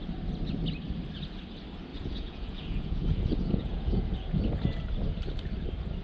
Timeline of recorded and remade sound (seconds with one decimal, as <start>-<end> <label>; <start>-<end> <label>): 0.0-1.9 recorded; 1.9-4.4 remade; 4.4-6.0 recorded